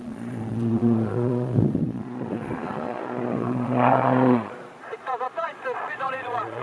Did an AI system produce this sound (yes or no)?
yes